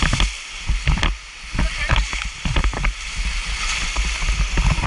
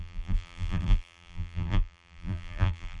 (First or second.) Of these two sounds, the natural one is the first